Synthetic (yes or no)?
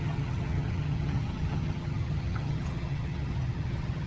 yes